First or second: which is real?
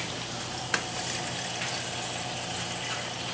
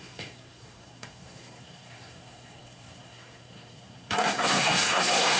first